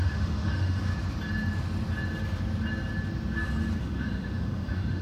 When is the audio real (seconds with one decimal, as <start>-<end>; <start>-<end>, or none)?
0.9-3.8